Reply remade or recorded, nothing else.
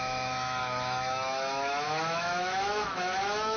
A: remade